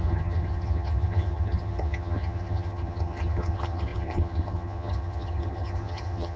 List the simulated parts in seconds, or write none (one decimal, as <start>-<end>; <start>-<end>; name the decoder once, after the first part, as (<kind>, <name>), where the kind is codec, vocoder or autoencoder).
0.0-6.4 (vocoder, HiFi-GAN)